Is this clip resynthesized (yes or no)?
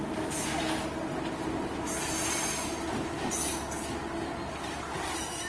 no